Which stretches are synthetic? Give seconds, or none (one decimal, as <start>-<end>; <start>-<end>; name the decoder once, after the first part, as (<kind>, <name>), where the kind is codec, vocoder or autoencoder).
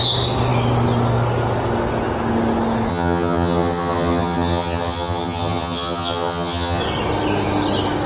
2.9-6.8 (vocoder, HiFi-GAN)